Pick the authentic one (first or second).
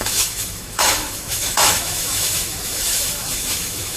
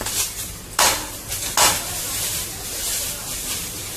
second